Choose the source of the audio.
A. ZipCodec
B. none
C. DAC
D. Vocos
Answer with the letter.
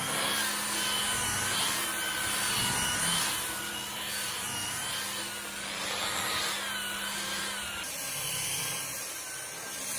B